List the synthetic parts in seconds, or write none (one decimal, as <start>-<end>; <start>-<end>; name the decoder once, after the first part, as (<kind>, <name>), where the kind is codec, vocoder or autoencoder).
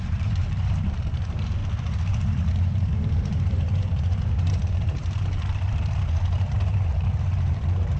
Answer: 0.0-1.6 (vocoder, BigVGAN v2); 2.3-8.0